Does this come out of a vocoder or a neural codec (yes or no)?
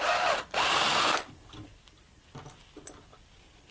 no